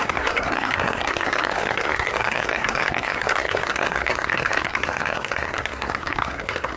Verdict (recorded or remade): remade